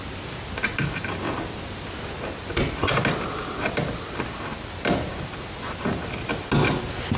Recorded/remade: recorded